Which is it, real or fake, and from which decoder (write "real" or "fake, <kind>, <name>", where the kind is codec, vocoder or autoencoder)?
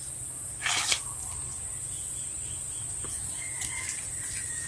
real